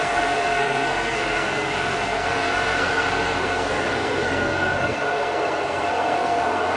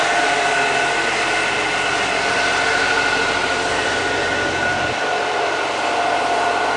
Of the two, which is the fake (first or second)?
first